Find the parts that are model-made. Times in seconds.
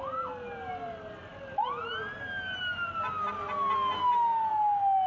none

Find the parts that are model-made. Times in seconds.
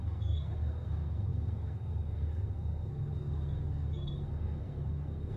0.0-5.4 (codec, SNAC)